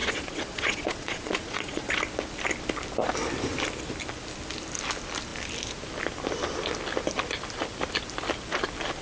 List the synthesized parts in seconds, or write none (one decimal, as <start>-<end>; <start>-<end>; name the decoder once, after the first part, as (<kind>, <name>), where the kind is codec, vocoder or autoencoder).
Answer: 0.0-1.9 (vocoder, Vocos)